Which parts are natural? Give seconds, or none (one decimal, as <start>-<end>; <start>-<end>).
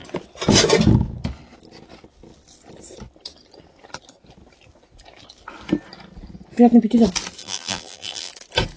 0.0-7.4; 8.3-8.8